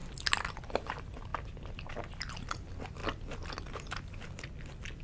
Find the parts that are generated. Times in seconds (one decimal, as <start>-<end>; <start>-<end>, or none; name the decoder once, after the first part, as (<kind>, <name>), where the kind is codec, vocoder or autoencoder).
none